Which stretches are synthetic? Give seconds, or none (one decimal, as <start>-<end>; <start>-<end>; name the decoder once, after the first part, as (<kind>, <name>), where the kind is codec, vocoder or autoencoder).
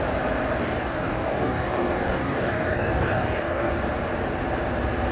0.6-3.7 (codec, DAC)